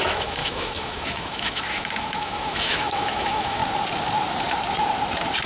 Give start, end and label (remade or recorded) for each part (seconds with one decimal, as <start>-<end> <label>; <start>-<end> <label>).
0.0-3.6 remade; 3.6-5.5 recorded